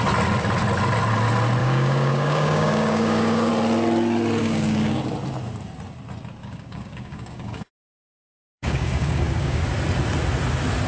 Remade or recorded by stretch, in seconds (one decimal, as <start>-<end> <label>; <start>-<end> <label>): 0.0-1.6 recorded; 1.6-3.5 remade; 3.5-4.4 recorded; 4.4-5.0 remade; 5.0-6.4 recorded; 6.4-9.6 remade; 9.6-10.9 recorded